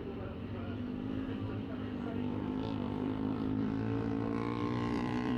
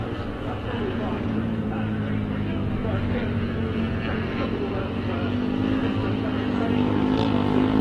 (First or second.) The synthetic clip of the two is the first